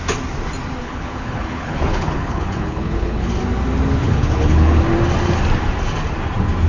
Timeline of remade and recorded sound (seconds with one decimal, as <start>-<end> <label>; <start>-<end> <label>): 0.0-0.8 recorded; 0.8-3.3 remade; 3.3-4.0 recorded; 4.0-4.8 remade; 4.8-6.7 recorded

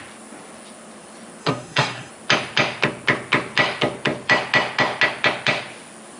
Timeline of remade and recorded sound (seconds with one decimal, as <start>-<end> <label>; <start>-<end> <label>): 0.0-1.4 recorded; 1.4-2.1 remade; 2.1-6.2 recorded

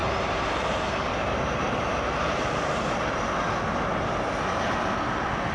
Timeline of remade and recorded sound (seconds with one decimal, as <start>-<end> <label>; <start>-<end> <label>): 0.0-3.3 remade; 3.3-5.5 recorded

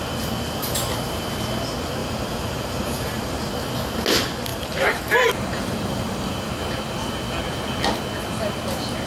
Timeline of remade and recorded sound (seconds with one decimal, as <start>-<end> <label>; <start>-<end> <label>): 0.0-2.0 recorded; 2.0-3.3 remade; 3.3-4.5 recorded; 4.5-6.5 remade; 6.5-9.1 recorded

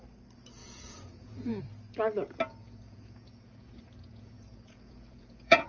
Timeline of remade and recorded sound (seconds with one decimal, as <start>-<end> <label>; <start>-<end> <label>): 0.0-0.6 recorded; 0.6-1.6 remade; 1.6-2.6 recorded; 2.6-5.7 remade

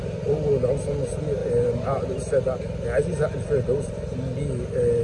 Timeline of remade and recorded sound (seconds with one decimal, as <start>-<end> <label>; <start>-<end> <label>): 0.0-1.4 recorded; 1.4-2.2 remade; 2.2-5.0 recorded

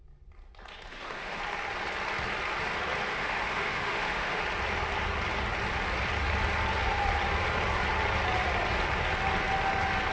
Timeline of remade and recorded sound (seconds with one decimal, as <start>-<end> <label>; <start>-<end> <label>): 0.0-0.9 recorded; 0.9-1.4 remade; 1.4-3.1 recorded; 3.1-4.4 remade; 4.4-10.1 recorded